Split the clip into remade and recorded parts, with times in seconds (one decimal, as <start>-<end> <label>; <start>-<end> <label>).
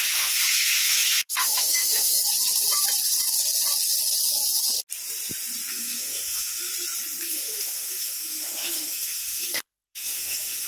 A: 0.0-2.2 remade; 2.2-5.7 recorded; 5.7-6.7 remade; 6.7-7.2 recorded; 7.2-10.7 remade